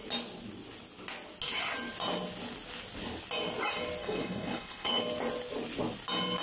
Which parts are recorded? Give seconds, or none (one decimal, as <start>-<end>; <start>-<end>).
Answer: 0.0-4.0; 5.0-6.4